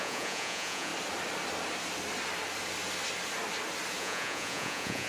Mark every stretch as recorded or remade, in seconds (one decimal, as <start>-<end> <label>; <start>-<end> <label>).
0.0-0.9 remade; 0.9-4.0 recorded; 4.0-5.1 remade